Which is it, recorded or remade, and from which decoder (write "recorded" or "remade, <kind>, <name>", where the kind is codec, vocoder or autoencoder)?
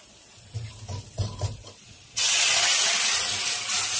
recorded